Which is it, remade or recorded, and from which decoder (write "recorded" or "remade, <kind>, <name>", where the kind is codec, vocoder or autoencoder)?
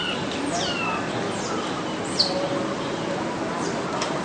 recorded